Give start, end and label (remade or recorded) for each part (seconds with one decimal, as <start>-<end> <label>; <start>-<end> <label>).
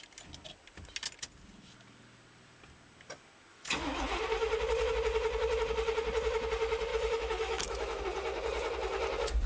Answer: 0.0-3.5 recorded; 3.5-4.2 remade; 4.2-6.9 recorded; 6.9-8.0 remade; 8.0-9.5 recorded